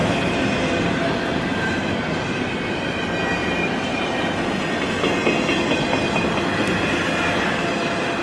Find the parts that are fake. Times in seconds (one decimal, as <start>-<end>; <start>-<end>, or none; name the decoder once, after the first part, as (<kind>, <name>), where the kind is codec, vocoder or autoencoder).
0.0-0.7 (vocoder, BigVGAN v2); 1.3-2.6; 3.4-4.0